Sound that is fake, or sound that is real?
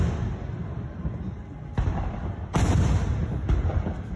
real